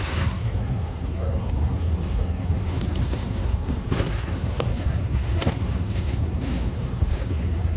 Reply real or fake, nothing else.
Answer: fake